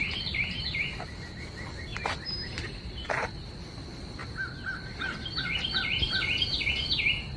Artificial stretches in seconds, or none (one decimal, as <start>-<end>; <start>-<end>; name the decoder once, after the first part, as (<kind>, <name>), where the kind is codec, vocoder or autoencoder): 0.0-0.8 (vocoder, BigVGAN v2); 1.9-2.8